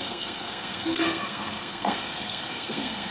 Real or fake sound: fake